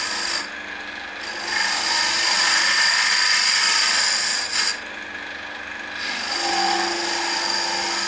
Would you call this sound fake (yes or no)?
no